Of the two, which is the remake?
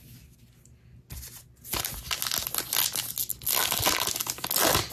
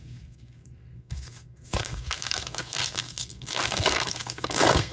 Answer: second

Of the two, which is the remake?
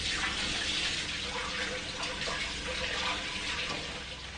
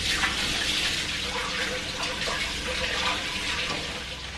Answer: second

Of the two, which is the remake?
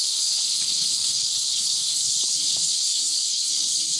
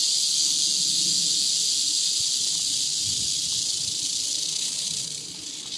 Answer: first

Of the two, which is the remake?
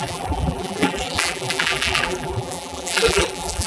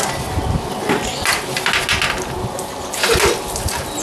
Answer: first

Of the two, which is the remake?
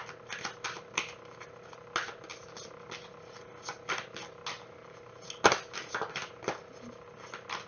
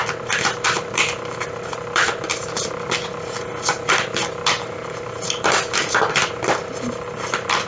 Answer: second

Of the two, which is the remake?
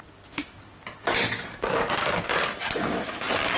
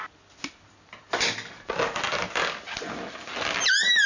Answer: first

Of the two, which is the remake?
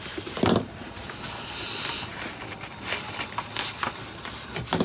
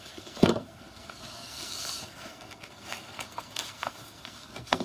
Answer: second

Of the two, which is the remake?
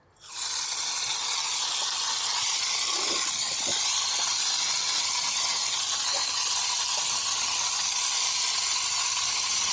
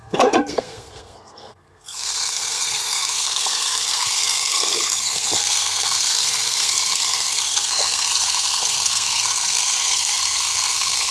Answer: second